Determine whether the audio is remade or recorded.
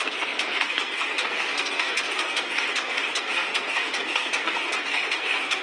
remade